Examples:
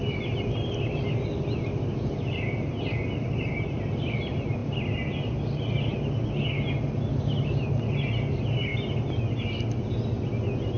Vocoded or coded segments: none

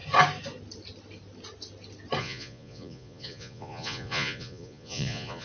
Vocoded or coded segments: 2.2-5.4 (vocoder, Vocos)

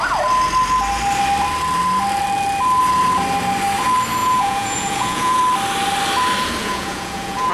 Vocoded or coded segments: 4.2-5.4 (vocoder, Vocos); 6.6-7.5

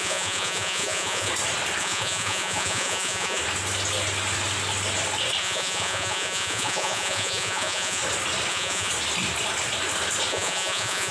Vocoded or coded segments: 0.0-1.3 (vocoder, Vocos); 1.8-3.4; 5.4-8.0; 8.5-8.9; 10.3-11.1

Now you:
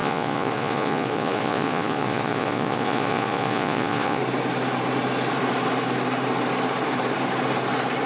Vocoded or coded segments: 0.0-4.2 (vocoder, Vocos)

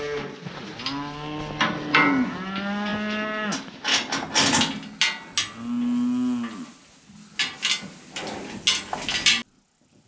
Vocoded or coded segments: none